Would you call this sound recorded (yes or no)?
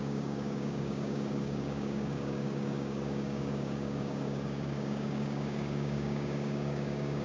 no